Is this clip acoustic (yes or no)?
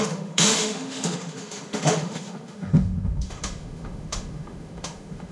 no